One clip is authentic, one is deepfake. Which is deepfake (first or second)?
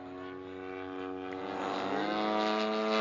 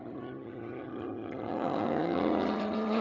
second